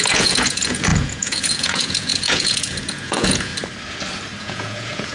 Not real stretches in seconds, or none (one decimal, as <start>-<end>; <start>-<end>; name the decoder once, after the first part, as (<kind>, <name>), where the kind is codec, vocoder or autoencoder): 0.0-3.5 (vocoder, Vocos); 4.4-5.1